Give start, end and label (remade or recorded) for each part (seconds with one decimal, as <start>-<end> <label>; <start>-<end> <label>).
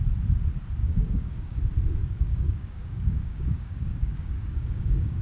0.0-0.8 recorded; 0.8-1.6 remade; 1.6-2.0 recorded; 2.0-5.2 remade